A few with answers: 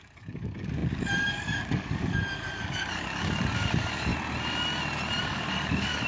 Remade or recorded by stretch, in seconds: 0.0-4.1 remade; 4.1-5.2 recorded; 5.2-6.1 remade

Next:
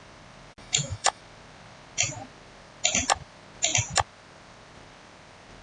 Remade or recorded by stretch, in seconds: 0.0-0.6 recorded; 0.6-1.2 remade; 1.2-5.6 recorded

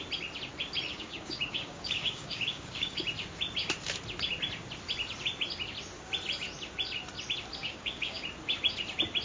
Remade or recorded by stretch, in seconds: 0.0-0.9 recorded; 0.9-3.0 remade; 3.0-7.6 recorded; 7.6-8.2 remade; 8.2-9.2 recorded

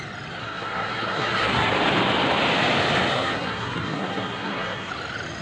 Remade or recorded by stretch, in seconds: 0.0-0.4 recorded; 0.4-1.7 remade; 1.7-3.1 recorded; 3.1-4.9 remade; 4.9-5.4 recorded

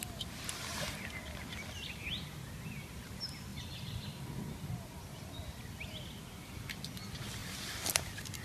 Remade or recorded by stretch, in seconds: 0.0-7.4 recorded; 7.4-8.4 remade

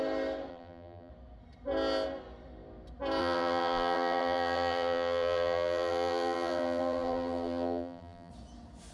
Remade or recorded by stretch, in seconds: 0.0-0.5 recorded; 0.5-1.1 remade; 1.1-3.2 recorded; 3.2-8.3 remade; 8.3-8.9 recorded

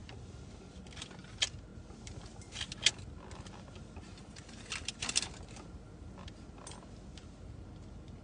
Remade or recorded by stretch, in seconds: 0.0-8.2 recorded

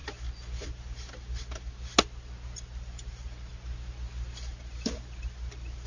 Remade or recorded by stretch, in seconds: 0.0-5.9 recorded